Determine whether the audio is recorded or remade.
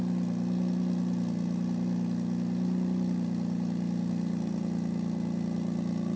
recorded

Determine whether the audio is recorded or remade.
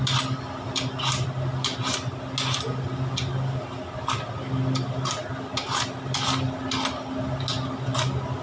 recorded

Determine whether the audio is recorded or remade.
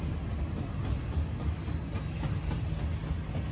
recorded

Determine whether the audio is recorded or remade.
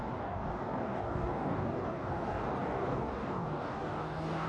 remade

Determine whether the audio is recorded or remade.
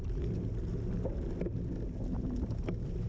recorded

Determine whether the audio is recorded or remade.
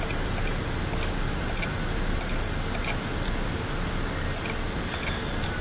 recorded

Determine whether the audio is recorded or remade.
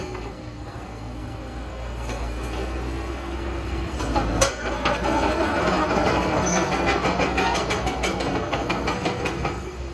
remade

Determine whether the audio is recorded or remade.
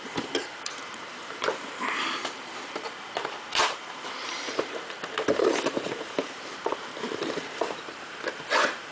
remade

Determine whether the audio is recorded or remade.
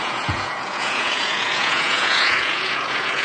remade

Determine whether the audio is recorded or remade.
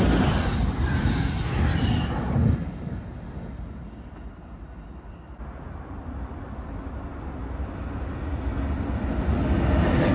recorded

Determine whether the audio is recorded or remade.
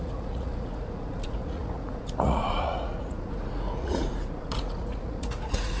remade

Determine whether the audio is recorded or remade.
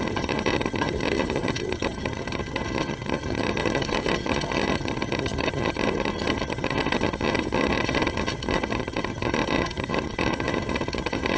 remade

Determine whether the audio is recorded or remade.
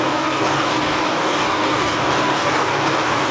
remade